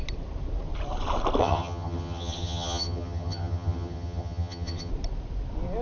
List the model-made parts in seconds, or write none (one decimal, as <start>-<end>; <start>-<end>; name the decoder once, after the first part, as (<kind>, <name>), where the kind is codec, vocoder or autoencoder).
1.4-4.9 (vocoder, HiFi-GAN)